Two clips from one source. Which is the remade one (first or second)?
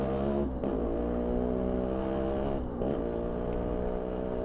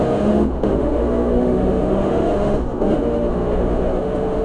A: second